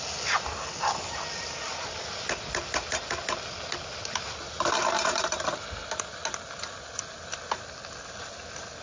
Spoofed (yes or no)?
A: no